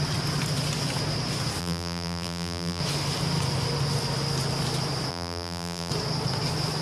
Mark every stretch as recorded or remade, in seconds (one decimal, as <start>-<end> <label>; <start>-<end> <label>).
0.0-1.6 recorded; 1.6-2.8 remade; 2.8-5.1 recorded; 5.1-5.9 remade; 5.9-6.8 recorded